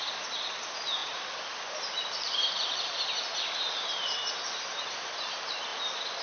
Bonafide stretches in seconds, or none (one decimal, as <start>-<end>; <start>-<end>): 0.0-1.0; 4.6-6.2